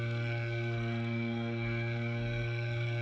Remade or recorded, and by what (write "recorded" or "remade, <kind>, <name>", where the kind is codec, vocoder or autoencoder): remade, codec, SNAC